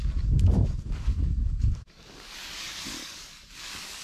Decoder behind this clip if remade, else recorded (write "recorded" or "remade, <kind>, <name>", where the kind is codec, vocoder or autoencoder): remade, codec, DAC